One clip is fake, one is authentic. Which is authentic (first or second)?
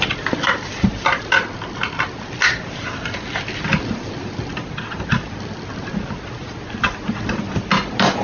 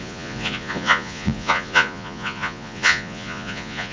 first